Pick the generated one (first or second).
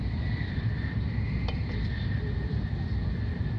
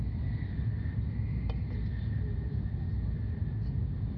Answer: first